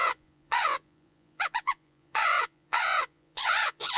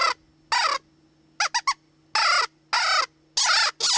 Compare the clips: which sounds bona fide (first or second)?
second